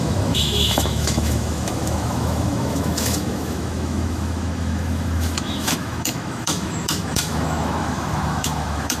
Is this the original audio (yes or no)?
no